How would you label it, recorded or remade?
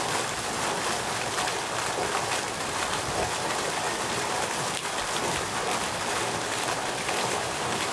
remade